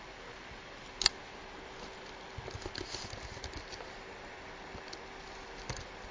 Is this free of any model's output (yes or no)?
yes